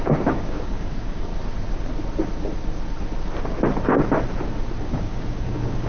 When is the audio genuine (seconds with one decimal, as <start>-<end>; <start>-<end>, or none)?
1.3-4.8